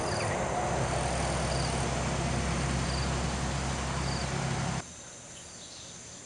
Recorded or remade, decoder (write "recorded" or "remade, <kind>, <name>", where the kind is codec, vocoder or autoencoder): recorded